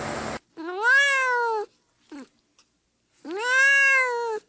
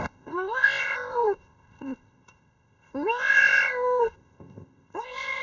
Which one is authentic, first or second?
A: first